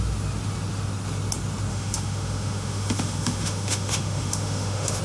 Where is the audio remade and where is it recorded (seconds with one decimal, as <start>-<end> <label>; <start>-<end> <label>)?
0.0-1.7 recorded; 1.7-5.0 remade